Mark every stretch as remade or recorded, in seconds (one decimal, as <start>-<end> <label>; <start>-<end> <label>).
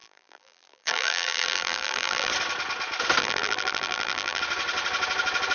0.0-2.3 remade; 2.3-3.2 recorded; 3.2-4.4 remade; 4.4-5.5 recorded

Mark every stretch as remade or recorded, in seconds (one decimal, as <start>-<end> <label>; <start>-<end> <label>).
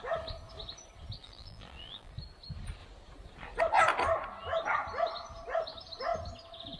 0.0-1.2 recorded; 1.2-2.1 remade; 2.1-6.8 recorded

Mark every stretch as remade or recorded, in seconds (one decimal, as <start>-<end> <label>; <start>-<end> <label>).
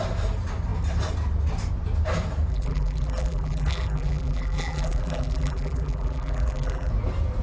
0.0-2.5 recorded; 2.5-6.9 remade; 6.9-7.4 recorded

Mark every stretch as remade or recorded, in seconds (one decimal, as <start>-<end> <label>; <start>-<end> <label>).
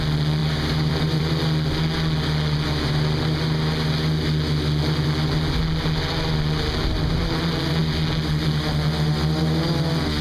0.0-0.4 recorded; 0.4-1.3 remade; 1.3-10.2 recorded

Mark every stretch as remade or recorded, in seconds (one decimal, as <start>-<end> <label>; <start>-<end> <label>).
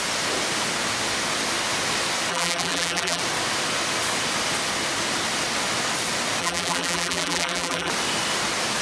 0.0-2.3 recorded; 2.3-3.2 remade; 3.2-6.4 recorded; 6.4-7.9 remade; 7.9-8.8 recorded